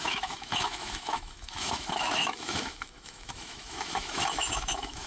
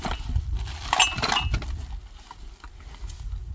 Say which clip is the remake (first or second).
first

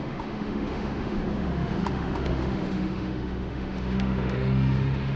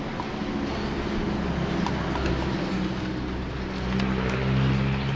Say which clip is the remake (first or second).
first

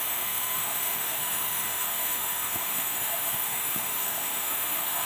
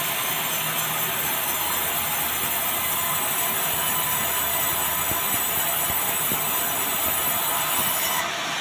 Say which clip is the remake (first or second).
first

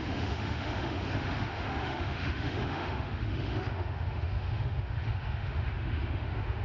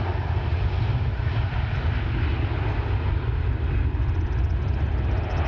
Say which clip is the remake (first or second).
first